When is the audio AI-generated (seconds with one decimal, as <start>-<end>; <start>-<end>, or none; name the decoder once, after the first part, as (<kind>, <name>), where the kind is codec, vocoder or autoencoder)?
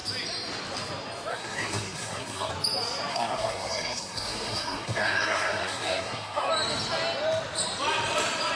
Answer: 1.3-2.5 (codec, SNAC); 3.1-6.5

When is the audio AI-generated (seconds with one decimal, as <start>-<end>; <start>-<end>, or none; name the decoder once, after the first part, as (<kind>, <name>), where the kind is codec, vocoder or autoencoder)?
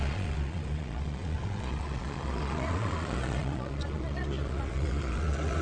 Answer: 0.0-5.6 (vocoder, Vocos)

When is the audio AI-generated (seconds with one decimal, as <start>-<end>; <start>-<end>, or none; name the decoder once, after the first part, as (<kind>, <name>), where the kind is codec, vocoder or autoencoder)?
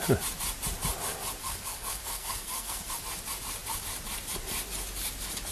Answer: 1.4-2.9 (codec, SNAC)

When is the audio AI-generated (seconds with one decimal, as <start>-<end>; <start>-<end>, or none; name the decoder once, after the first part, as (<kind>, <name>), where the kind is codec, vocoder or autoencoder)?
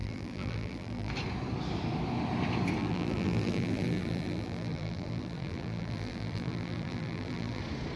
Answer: 0.0-1.1 (vocoder, BigVGAN v2); 2.8-7.6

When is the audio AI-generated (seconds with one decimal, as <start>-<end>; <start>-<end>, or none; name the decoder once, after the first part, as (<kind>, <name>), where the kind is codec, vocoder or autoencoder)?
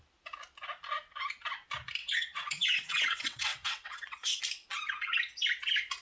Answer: 2.0-4.4 (vocoder, WaveNeXt)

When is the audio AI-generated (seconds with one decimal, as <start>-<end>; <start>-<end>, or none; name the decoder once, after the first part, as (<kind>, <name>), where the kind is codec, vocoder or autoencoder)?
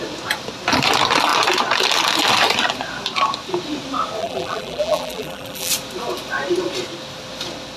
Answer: 4.2-5.7 (vocoder, BigVGAN v2)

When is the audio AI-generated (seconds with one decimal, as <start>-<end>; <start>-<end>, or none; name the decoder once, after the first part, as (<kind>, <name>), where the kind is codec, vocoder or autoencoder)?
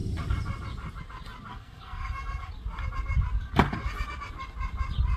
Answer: 1.5-2.5 (codec, SNAC)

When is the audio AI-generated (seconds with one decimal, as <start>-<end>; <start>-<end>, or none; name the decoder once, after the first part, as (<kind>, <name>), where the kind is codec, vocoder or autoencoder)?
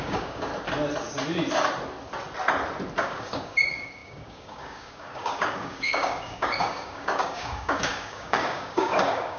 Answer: 0.0-0.5 (codec, DAC); 3.0-9.4